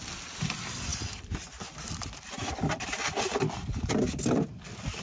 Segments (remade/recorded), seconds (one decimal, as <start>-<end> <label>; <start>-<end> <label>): 0.0-5.0 recorded

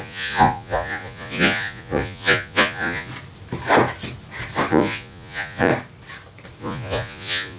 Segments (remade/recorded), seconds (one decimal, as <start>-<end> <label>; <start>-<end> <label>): 0.0-3.1 remade; 3.1-4.7 recorded; 4.7-5.7 remade; 5.7-6.6 recorded; 6.6-7.6 remade

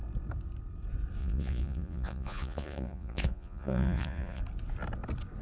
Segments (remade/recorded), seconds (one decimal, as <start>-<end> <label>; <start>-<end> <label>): 0.0-1.2 recorded; 1.2-4.4 remade; 4.4-5.4 recorded

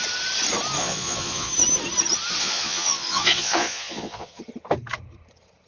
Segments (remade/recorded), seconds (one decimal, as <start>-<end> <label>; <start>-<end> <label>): 0.0-0.8 recorded; 0.8-1.5 remade; 1.5-2.4 recorded; 2.4-4.4 remade; 4.4-5.7 recorded

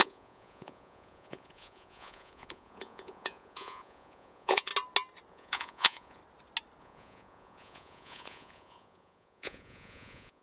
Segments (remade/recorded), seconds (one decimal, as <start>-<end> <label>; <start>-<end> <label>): 0.0-4.7 remade; 4.7-5.3 recorded; 5.3-6.2 remade; 6.2-6.8 recorded; 6.8-10.4 remade